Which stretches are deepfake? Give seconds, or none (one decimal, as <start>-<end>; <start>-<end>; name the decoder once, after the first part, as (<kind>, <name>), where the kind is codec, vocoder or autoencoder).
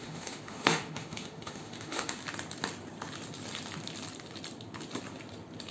0.0-2.2 (autoencoder, DAC-VAE)